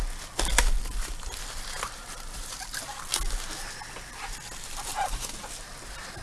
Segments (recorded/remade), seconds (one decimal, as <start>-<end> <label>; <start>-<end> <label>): 0.0-0.9 recorded; 0.9-3.0 remade; 3.0-6.2 recorded